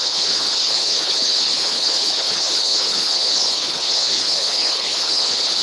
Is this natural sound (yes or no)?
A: no